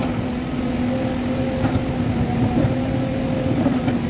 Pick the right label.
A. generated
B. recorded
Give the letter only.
B